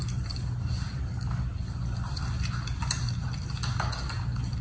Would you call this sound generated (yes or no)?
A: no